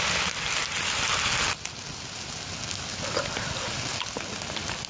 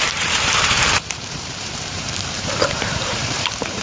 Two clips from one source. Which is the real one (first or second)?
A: first